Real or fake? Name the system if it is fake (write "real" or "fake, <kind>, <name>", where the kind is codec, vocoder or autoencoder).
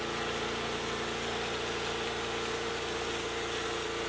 real